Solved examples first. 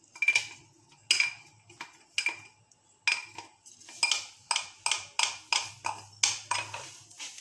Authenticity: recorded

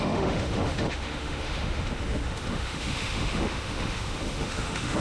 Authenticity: remade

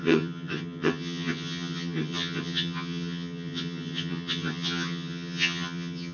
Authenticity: remade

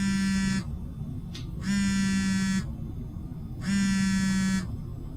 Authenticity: recorded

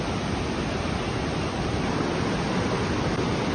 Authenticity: recorded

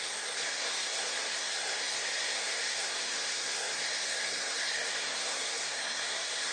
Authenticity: remade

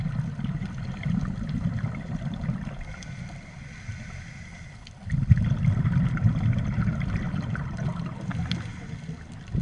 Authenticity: recorded